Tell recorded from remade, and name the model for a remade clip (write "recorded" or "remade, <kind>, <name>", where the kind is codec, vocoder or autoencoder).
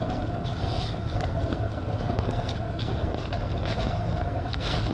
remade, codec, SNAC